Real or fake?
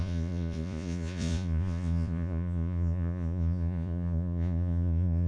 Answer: fake